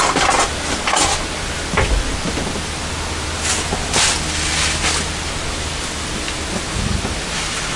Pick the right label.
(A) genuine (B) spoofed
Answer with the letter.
A